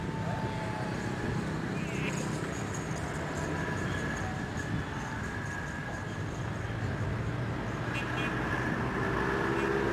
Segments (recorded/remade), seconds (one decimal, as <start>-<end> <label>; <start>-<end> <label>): 0.0-9.9 recorded